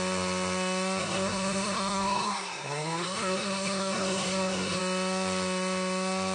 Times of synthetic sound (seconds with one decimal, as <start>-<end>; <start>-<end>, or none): 1.0-4.8